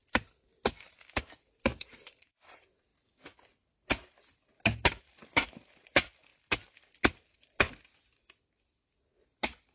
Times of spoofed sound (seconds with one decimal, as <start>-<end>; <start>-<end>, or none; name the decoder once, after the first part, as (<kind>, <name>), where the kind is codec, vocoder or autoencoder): 0.9-2.9 (vocoder, BigVGAN v2); 5.0-6.3; 9.2-9.7